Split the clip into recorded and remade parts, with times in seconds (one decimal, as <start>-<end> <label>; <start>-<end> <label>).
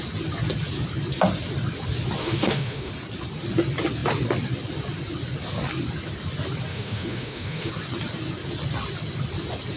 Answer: 0.0-2.2 recorded; 2.2-2.9 remade; 2.9-6.7 recorded; 6.7-7.7 remade; 7.7-9.8 recorded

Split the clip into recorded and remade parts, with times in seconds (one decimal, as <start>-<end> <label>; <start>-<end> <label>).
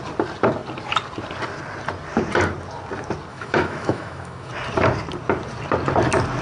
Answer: 0.0-3.3 recorded; 3.3-4.5 remade; 4.5-6.4 recorded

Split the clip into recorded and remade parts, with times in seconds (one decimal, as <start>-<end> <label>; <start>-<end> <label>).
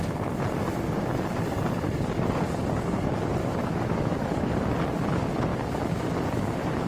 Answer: 0.0-3.4 recorded; 3.4-4.5 remade; 4.5-6.9 recorded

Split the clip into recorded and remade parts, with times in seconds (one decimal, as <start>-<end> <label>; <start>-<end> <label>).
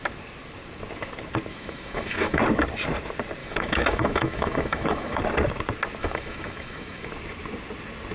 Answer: 0.0-1.5 recorded; 1.5-2.4 remade; 2.4-3.4 recorded; 3.4-5.2 remade; 5.2-6.0 recorded; 6.0-7.1 remade; 7.1-8.1 recorded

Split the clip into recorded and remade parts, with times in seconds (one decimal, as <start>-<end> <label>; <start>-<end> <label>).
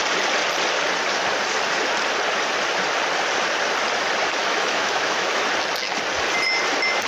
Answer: 0.0-4.4 recorded; 4.4-5.4 remade; 5.4-7.1 recorded